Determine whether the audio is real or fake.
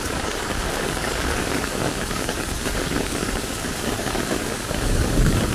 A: fake